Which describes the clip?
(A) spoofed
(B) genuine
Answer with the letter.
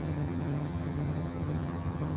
A